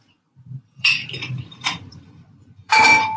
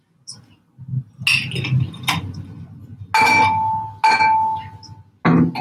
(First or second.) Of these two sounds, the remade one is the first